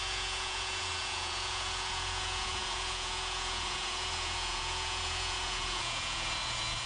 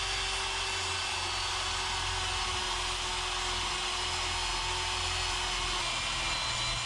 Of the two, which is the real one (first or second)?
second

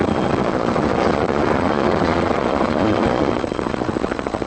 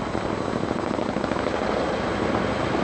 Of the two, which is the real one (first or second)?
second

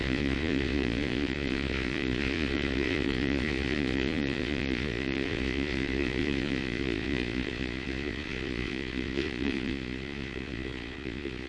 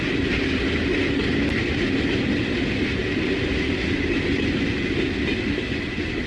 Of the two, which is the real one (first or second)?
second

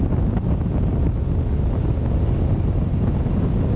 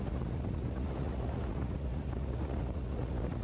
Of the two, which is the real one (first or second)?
first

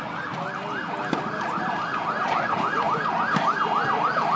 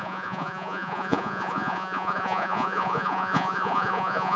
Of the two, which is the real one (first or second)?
first